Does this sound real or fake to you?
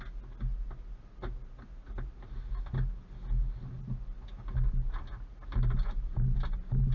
real